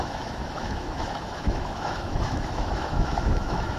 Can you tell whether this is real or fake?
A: fake